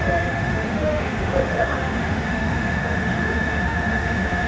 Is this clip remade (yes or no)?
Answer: yes